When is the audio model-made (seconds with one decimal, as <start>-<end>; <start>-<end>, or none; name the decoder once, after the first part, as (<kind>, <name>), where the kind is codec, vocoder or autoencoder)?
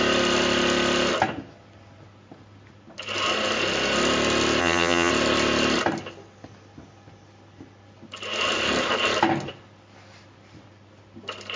4.6-5.1 (vocoder, HiFi-GAN)